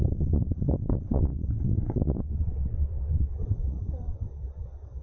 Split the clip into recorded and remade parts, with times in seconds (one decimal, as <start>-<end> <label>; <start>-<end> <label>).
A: 0.0-5.0 remade